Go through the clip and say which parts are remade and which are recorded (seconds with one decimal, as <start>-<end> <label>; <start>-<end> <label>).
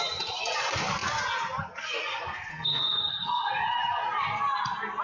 0.0-2.5 recorded; 2.5-3.1 remade; 3.1-5.0 recorded